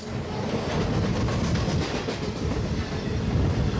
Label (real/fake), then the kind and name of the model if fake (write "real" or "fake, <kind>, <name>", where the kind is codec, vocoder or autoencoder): real